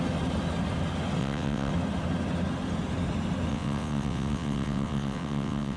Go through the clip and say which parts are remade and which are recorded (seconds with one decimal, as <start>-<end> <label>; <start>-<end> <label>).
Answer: 0.0-1.2 recorded; 1.2-1.7 remade; 1.7-3.5 recorded; 3.5-5.8 remade